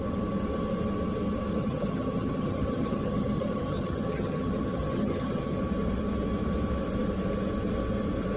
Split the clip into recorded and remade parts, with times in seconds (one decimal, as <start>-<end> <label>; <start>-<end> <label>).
0.0-1.6 recorded; 1.6-5.6 remade; 5.6-8.4 recorded